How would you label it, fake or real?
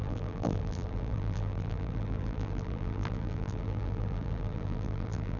fake